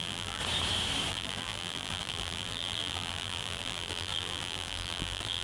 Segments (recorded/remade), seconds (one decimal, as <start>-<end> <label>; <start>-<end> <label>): 0.0-0.4 remade; 0.4-1.1 recorded; 1.1-5.4 remade